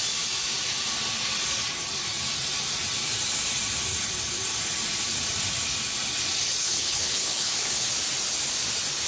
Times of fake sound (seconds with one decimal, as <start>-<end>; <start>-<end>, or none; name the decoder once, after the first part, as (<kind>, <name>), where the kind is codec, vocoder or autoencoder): 6.6-7.9 (codec, HILCodec)